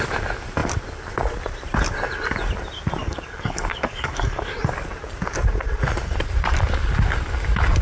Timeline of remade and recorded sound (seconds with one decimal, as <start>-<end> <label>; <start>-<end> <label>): 0.0-3.0 recorded; 3.0-4.6 remade; 4.6-7.8 recorded